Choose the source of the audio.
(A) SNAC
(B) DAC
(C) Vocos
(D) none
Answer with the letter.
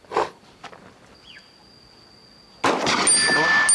D